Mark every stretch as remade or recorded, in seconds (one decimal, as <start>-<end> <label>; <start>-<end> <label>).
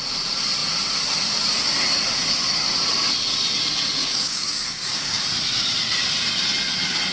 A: 0.0-4.0 recorded; 4.0-5.2 remade; 5.2-7.1 recorded